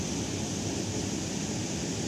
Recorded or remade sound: recorded